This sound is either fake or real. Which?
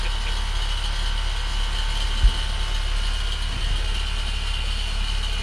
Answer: real